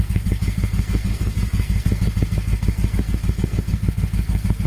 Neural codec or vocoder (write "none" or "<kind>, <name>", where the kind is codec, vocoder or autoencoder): codec, SNAC